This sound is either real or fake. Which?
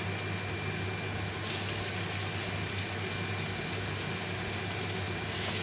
real